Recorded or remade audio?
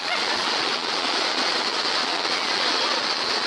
remade